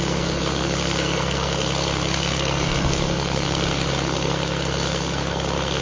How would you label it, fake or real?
fake